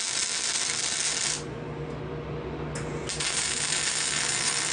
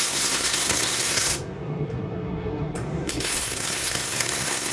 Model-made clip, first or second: second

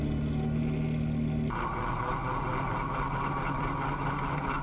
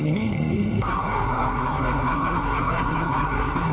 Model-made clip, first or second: second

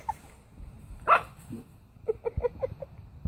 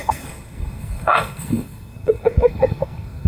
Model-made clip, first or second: second